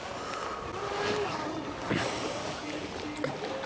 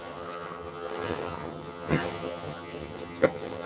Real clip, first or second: first